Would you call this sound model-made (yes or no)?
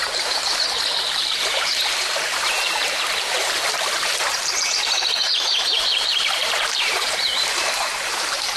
yes